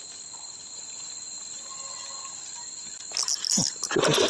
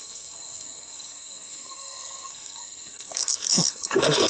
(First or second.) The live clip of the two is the first